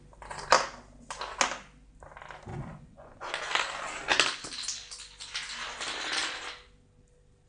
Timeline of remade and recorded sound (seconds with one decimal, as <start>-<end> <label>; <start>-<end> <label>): 0.0-2.5 recorded; 2.5-3.3 remade; 3.3-7.5 recorded